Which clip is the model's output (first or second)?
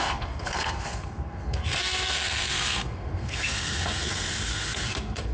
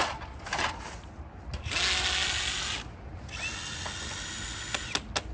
first